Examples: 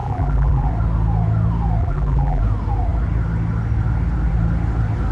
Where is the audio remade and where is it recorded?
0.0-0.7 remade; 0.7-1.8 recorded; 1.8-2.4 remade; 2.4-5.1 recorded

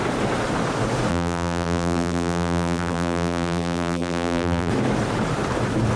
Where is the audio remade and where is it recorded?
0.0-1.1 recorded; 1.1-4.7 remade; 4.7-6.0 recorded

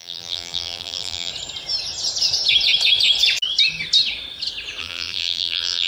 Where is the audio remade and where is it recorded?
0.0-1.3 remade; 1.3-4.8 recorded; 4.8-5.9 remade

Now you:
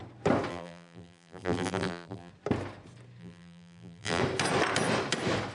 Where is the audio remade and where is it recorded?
0.0-0.5 recorded; 0.5-2.3 remade; 2.3-3.2 recorded; 3.2-4.2 remade; 4.2-5.5 recorded